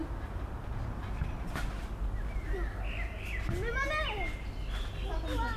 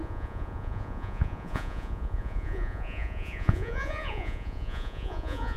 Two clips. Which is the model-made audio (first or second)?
second